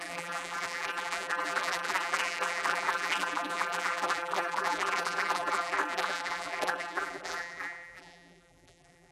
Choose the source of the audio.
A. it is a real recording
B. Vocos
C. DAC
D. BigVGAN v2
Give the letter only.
D